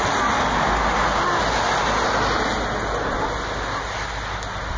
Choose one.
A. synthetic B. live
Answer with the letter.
B